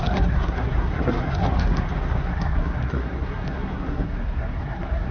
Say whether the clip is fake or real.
fake